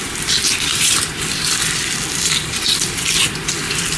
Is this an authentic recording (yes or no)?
no